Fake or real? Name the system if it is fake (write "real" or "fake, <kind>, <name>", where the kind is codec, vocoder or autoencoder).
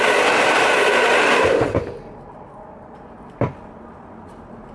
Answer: real